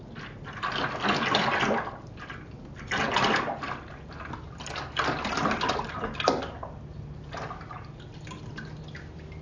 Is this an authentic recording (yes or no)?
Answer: yes